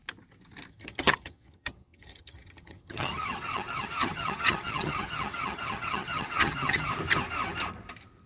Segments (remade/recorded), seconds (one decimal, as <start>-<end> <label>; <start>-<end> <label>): 0.0-0.7 recorded; 0.7-6.9 remade; 6.9-8.3 recorded